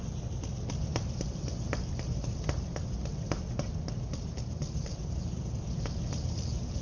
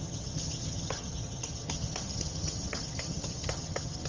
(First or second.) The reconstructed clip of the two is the second